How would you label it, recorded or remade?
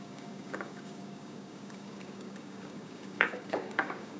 remade